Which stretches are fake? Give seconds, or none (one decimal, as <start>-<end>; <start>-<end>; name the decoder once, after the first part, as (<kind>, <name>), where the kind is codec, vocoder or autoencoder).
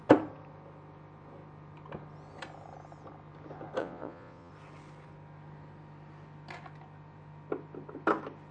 3.8-4.5 (vocoder, Vocos)